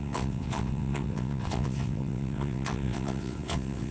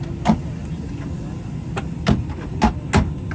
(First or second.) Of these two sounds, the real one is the second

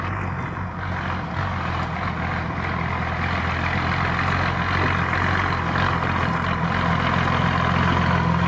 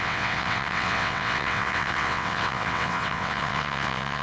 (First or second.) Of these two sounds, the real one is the first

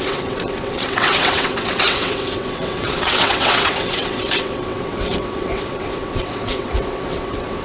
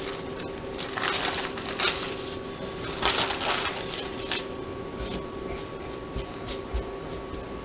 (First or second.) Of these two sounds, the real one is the second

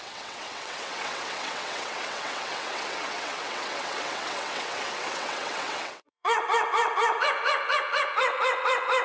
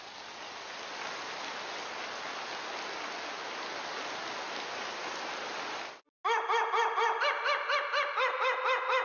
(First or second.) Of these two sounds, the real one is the second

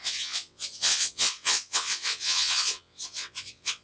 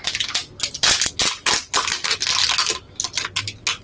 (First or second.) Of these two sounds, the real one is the second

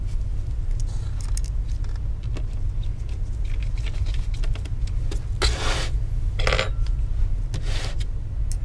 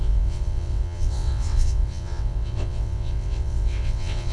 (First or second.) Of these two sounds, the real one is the first